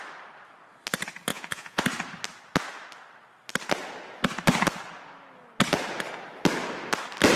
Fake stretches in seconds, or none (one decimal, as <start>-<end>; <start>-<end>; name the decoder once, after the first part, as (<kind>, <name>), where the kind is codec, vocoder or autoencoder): 1.3-1.8 (vocoder, Vocos)